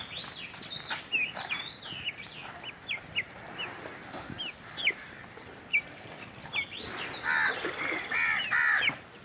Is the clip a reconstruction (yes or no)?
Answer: no